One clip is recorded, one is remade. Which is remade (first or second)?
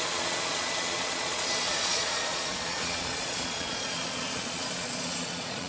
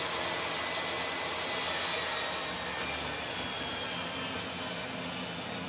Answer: first